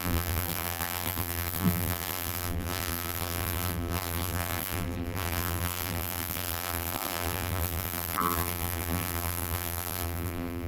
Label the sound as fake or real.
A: fake